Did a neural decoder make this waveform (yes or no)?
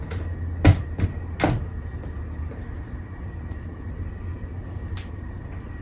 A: no